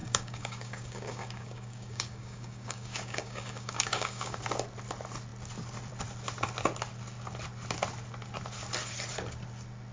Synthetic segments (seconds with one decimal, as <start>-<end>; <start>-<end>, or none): 0.0-4.4